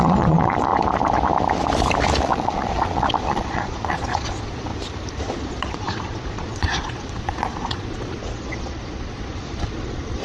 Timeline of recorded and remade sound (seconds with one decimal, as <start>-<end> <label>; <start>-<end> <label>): 0.0-0.7 remade; 0.7-2.2 recorded; 2.2-4.7 remade; 4.7-5.5 recorded; 5.5-10.2 remade